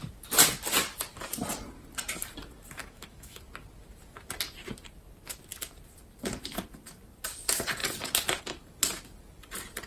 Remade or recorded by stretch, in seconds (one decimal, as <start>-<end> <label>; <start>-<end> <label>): 0.0-2.8 recorded; 2.8-3.4 remade; 3.4-9.9 recorded